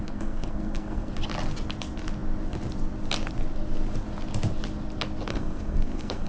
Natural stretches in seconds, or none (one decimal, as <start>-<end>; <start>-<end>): 1.1-5.3